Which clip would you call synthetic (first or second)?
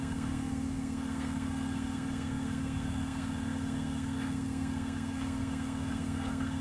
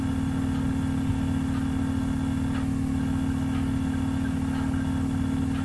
first